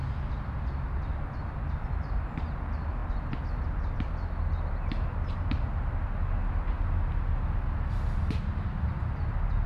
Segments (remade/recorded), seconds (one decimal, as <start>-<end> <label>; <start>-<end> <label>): 0.0-9.7 recorded